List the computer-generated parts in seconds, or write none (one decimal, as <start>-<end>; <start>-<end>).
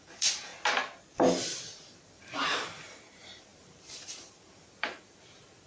0.0-0.5; 1.4-5.7